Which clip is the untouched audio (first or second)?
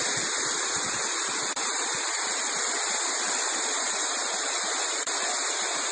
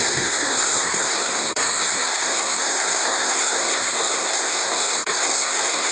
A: first